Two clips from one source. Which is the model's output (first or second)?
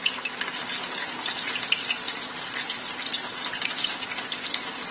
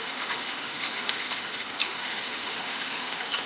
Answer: second